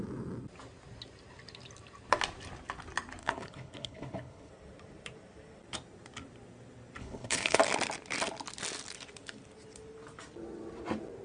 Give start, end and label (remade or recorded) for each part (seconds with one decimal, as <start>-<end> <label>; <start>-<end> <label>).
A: 0.0-3.2 recorded; 3.2-4.5 remade; 4.5-7.0 recorded; 7.0-7.6 remade; 7.6-11.2 recorded